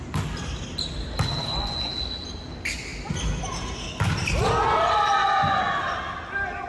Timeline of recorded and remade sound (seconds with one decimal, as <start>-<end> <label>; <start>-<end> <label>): 0.0-1.4 recorded; 1.4-1.9 remade; 1.9-5.2 recorded; 5.2-5.9 remade; 5.9-6.7 recorded